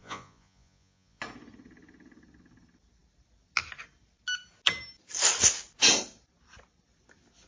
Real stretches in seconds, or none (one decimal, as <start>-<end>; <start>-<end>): 1.2-7.5